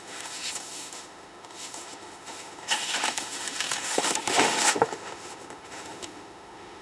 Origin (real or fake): fake